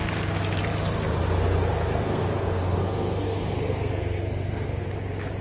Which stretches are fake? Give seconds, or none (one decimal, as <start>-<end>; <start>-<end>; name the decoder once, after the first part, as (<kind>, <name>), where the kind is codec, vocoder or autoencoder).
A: 1.7-4.9 (codec, SNAC)